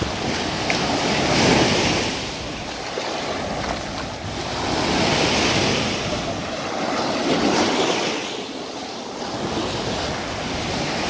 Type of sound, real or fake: real